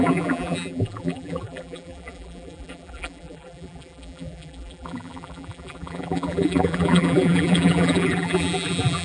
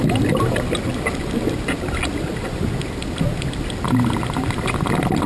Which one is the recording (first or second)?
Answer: second